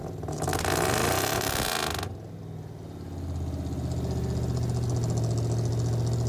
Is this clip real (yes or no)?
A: yes